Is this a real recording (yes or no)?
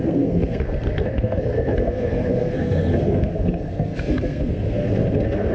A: no